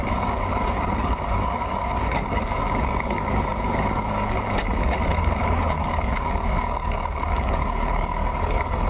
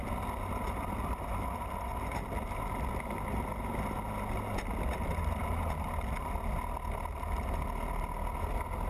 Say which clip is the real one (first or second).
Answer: second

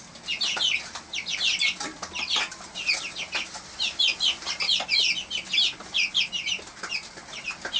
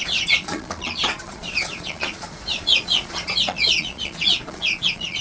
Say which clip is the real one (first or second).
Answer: first